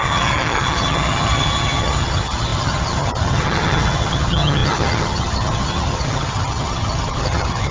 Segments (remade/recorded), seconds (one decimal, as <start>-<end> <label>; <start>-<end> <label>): 0.0-7.7 remade